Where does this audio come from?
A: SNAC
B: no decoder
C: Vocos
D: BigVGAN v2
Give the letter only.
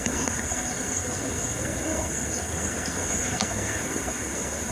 A